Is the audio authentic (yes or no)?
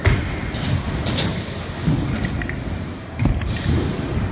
yes